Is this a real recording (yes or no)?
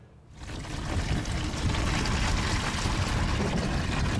yes